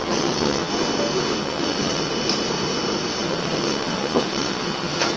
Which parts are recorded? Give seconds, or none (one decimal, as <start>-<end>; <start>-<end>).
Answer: 0.7-1.4; 2.1-3.2